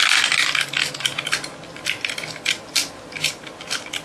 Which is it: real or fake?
real